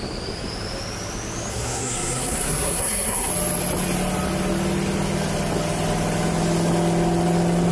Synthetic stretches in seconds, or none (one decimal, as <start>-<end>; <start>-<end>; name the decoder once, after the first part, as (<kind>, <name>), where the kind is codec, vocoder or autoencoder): 1.5-3.3 (codec, SNAC)